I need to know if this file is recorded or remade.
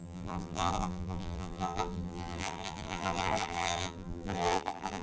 remade